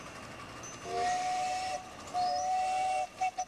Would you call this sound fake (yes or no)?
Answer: no